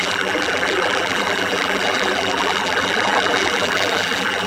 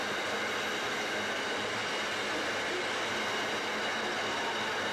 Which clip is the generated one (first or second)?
first